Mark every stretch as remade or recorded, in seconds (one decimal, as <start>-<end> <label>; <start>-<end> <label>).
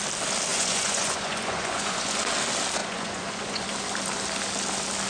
0.0-0.5 recorded; 0.5-2.2 remade; 2.2-2.8 recorded; 2.8-3.7 remade; 3.7-5.1 recorded